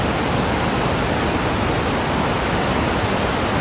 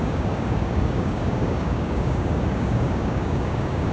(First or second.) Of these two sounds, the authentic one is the first